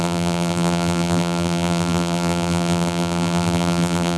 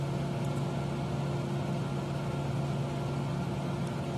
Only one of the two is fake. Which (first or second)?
first